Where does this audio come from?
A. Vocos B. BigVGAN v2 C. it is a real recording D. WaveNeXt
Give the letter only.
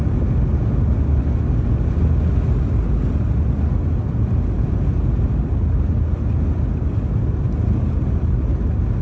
C